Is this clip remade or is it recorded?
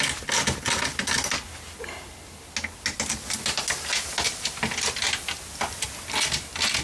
recorded